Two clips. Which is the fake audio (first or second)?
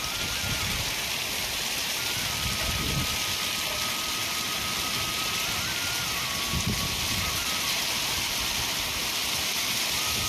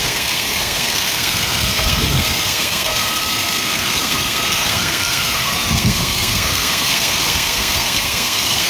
second